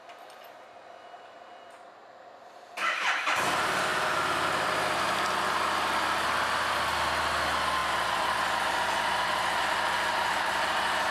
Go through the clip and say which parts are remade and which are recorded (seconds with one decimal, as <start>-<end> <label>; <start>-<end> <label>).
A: 0.0-3.9 remade; 3.9-5.0 recorded; 5.0-7.8 remade; 7.8-9.6 recorded; 9.6-11.1 remade